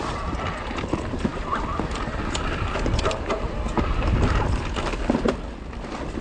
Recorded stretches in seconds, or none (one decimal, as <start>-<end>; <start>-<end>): 0.0-6.2

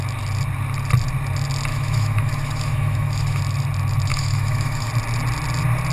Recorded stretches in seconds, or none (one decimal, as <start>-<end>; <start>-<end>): 0.0-1.7; 3.4-4.1; 4.9-5.9

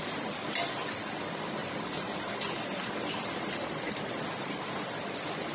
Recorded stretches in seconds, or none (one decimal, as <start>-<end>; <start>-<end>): 0.0-5.5

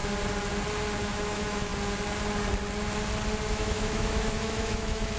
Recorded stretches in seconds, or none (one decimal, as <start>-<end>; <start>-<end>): 0.0-1.0; 1.7-3.5